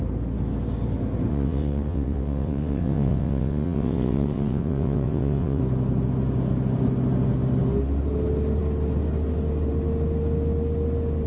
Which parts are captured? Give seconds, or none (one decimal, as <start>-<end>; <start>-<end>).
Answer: 0.0-1.3; 5.6-11.3